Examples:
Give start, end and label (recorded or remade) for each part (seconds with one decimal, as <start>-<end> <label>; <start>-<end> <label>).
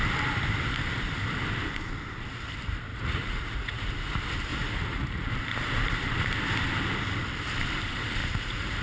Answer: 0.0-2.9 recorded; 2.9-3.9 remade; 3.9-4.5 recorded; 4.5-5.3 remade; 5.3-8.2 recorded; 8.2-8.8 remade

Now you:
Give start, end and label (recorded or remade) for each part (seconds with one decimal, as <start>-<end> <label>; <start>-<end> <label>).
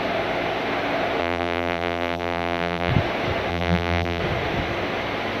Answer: 0.0-1.2 recorded; 1.2-2.9 remade; 2.9-3.5 recorded; 3.5-4.2 remade; 4.2-5.4 recorded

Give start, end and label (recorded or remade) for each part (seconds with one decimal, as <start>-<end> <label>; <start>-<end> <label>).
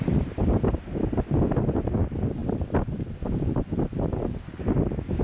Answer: 0.0-5.2 recorded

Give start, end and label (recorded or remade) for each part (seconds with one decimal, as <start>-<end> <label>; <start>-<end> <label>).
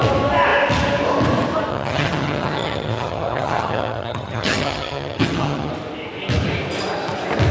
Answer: 0.0-1.7 recorded; 1.7-5.7 remade; 5.7-7.5 recorded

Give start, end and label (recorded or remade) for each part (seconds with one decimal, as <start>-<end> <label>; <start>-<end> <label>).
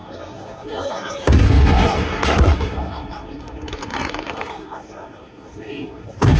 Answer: 0.0-6.4 remade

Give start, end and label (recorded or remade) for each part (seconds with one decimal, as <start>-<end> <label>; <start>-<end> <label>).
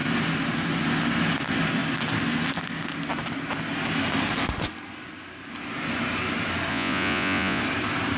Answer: 0.0-6.7 recorded; 6.7-7.6 remade; 7.6-8.2 recorded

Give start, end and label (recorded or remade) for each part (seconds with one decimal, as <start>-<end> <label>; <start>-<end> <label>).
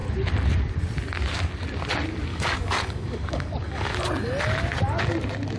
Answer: 0.0-2.3 recorded; 2.3-3.9 remade; 3.9-5.6 recorded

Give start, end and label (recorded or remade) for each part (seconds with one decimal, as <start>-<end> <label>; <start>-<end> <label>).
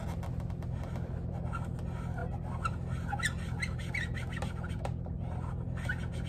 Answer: 0.0-6.3 recorded